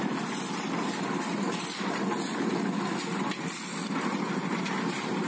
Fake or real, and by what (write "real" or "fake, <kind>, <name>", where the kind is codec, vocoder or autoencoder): fake, vocoder, BigVGAN v2